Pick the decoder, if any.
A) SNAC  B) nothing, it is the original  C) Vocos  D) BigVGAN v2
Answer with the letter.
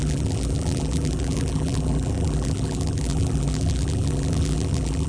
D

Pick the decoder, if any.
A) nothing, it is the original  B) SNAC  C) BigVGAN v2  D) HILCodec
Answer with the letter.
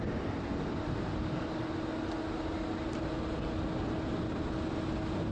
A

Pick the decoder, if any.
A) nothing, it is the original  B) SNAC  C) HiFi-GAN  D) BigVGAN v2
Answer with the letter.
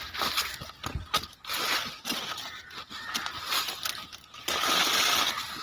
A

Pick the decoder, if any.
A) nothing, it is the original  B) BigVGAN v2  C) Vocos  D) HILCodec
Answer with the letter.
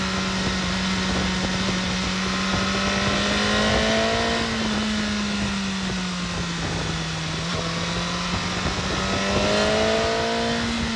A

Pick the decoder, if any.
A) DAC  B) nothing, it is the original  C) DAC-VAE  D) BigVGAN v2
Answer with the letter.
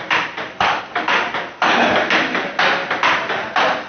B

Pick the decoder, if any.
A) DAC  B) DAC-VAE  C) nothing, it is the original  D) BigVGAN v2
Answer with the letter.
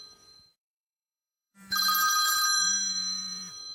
D